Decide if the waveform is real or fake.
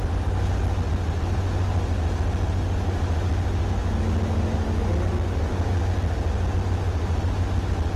real